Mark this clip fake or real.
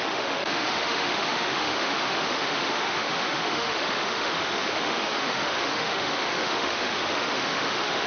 fake